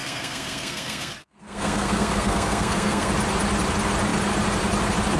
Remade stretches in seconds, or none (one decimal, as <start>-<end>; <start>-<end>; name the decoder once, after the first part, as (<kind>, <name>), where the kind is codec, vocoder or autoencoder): 0.0-3.1 (codec, SNAC)